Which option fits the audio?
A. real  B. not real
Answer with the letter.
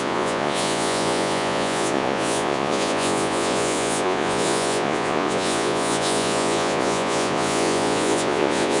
B